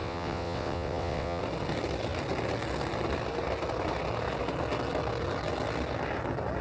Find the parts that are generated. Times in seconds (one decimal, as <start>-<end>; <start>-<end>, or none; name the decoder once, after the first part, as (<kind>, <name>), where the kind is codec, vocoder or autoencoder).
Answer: 0.0-1.4 (vocoder, WaveNeXt)